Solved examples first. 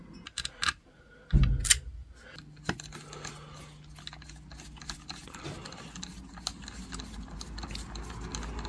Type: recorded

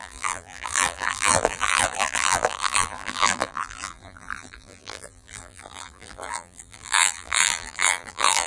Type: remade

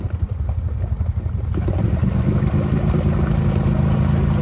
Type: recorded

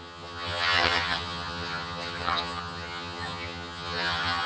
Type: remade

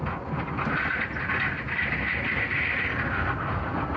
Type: recorded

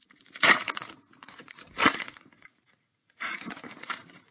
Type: remade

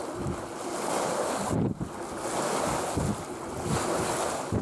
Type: recorded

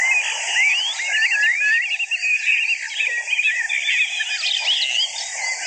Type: recorded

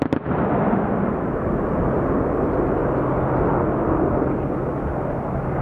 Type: recorded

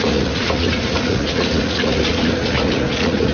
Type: remade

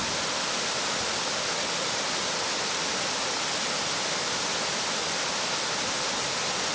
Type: recorded